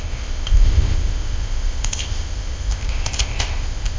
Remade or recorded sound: remade